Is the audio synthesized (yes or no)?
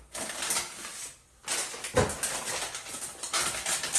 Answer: no